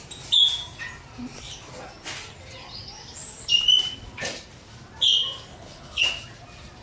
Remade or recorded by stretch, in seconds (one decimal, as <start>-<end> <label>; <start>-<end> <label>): 0.0-5.5 recorded; 5.5-6.0 remade; 6.0-6.8 recorded